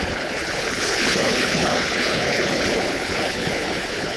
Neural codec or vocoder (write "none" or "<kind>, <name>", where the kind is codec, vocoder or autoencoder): codec, HILCodec